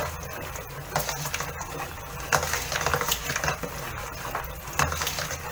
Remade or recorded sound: recorded